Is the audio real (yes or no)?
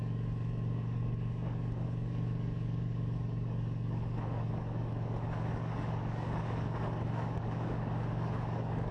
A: no